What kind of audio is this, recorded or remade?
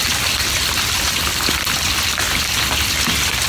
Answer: recorded